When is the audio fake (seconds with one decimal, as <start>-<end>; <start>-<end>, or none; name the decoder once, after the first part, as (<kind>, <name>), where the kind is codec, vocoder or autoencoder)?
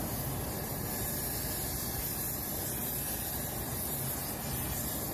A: none